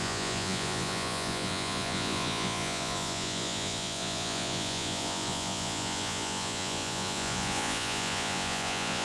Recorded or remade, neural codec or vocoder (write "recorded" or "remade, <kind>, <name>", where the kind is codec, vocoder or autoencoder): remade, vocoder, Vocos